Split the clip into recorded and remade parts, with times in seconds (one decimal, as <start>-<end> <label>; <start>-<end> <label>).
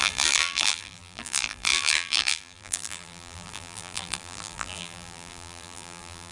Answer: 0.0-6.3 remade